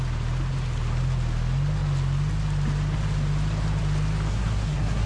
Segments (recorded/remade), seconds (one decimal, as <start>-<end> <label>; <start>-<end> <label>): 0.0-4.3 recorded; 4.3-5.1 remade